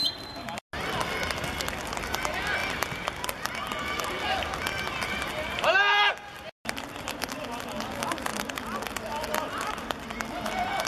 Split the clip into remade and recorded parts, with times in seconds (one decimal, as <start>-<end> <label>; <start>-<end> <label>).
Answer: 0.0-10.9 recorded